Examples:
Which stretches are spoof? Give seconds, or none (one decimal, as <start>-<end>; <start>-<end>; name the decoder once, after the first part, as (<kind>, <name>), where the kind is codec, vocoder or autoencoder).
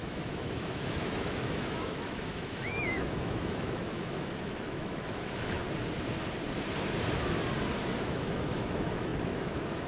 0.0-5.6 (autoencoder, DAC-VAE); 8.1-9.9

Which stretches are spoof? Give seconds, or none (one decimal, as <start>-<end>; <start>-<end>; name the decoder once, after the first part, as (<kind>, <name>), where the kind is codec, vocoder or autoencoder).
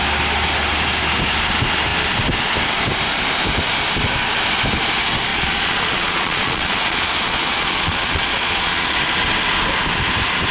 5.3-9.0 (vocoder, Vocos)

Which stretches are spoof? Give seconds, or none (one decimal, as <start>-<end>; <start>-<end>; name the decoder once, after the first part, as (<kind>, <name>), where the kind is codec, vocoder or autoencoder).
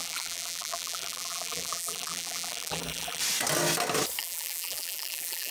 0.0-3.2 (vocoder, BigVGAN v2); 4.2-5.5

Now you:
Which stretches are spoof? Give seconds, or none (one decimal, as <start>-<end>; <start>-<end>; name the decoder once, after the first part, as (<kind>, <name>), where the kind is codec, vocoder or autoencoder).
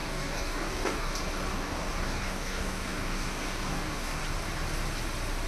0.0-1.1 (codec, DAC); 1.5-4.2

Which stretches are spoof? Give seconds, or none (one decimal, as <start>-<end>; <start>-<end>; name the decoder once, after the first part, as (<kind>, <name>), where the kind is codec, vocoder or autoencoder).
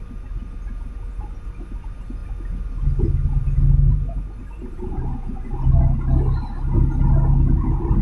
none